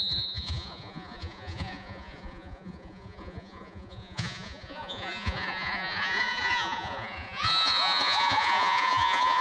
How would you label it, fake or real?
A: fake